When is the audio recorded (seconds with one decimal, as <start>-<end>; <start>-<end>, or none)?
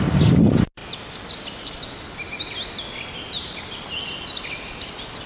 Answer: 0.0-5.3